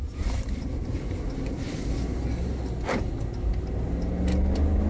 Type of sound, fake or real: real